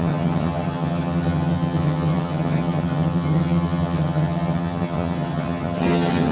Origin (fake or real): fake